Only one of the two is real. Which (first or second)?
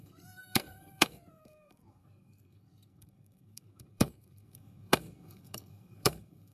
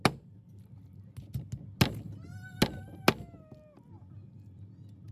second